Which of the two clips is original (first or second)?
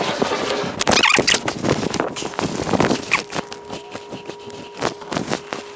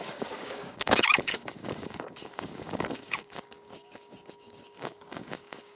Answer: first